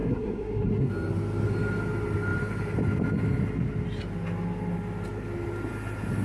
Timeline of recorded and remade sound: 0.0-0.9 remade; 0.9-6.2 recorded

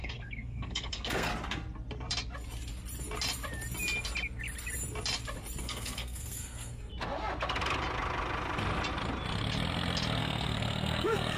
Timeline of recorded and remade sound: 0.0-1.3 remade; 1.3-5.6 recorded; 5.6-6.9 remade; 6.9-10.2 recorded; 10.2-11.4 remade

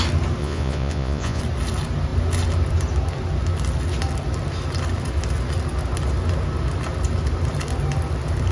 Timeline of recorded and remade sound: 0.0-0.4 recorded; 0.4-1.4 remade; 1.4-8.5 recorded

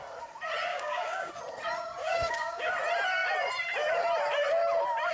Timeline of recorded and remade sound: 0.0-0.7 recorded; 0.7-1.3 remade; 1.3-2.0 recorded; 2.0-2.7 remade; 2.7-5.1 recorded

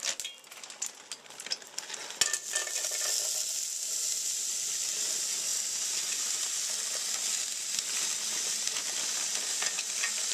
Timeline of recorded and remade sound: 0.0-10.3 recorded

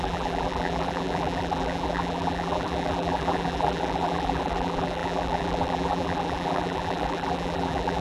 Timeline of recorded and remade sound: 0.0-8.0 remade

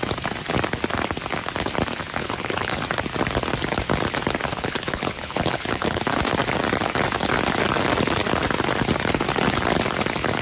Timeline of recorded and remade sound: 0.0-2.2 recorded; 2.2-2.8 remade; 2.8-4.5 recorded; 4.5-6.0 remade; 6.0-10.4 recorded

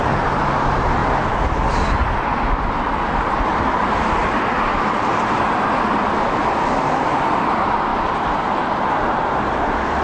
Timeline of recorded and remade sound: 0.0-1.0 remade; 1.0-3.2 recorded; 3.2-4.2 remade; 4.2-5.2 recorded; 5.2-7.9 remade; 7.9-9.3 recorded; 9.3-10.0 remade